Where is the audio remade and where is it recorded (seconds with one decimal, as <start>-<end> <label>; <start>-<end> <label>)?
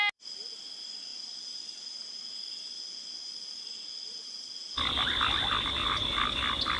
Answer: 0.0-6.8 recorded